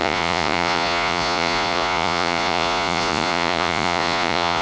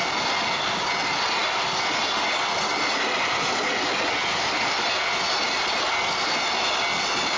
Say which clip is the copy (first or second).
first